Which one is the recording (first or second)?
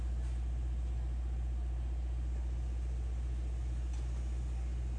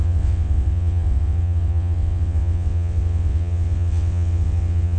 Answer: first